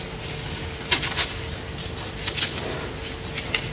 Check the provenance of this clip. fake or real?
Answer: real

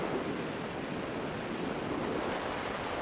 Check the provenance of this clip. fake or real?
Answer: real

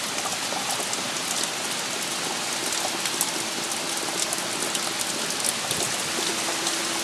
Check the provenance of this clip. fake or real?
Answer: real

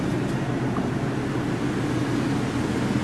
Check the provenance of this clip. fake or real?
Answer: real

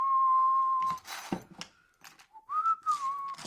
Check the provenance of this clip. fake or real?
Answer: real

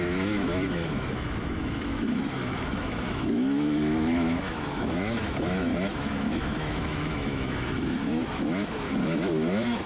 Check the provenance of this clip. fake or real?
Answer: fake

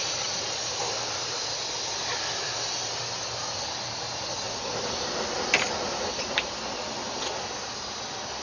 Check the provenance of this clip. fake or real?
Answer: real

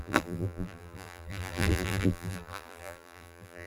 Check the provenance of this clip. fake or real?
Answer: fake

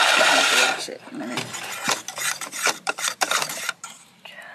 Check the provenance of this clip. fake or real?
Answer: fake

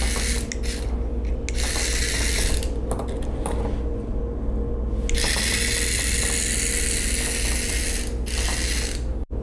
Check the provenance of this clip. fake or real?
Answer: real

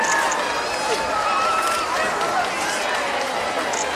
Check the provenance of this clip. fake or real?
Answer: real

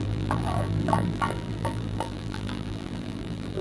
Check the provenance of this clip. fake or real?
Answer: fake